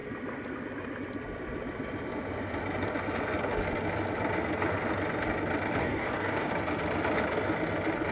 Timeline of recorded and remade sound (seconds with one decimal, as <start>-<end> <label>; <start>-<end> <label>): 0.0-5.8 recorded; 5.8-6.5 remade; 6.5-8.1 recorded